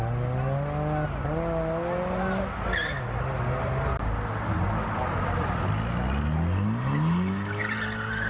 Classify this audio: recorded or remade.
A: recorded